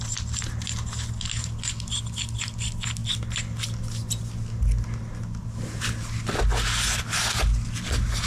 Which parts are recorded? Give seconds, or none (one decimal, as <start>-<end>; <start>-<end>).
0.0-8.3